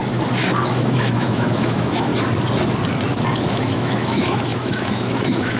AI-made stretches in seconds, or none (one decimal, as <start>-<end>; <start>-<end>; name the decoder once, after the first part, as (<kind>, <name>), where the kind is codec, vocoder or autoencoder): 0.7-2.1 (autoencoder, DAC-VAE); 3.5-5.6